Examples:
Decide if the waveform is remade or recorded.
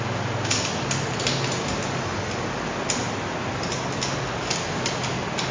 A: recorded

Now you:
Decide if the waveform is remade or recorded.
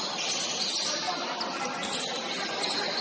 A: recorded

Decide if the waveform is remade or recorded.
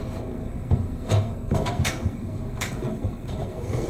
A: remade